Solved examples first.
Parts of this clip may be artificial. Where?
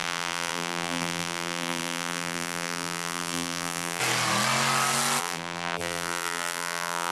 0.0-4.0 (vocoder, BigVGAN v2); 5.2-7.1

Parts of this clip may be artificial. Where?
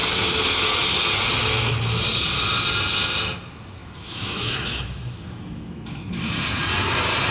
3.8-6.2 (autoencoder, DAC-VAE)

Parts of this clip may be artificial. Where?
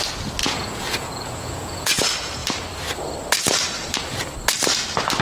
0.4-2.0 (vocoder, Vocos)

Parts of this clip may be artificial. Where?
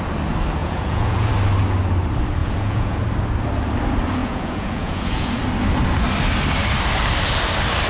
0.6-1.3 (vocoder, Vocos); 2.4-3.0; 4.2-5.3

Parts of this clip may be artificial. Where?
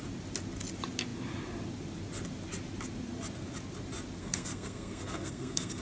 4.2-5.8 (codec, SNAC)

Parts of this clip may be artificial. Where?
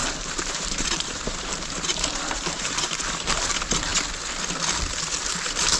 0.0-3.5 (vocoder, BigVGAN v2)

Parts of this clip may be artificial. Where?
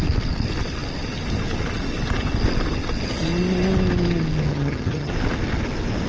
4.5-5.1 (vocoder, HiFi-GAN)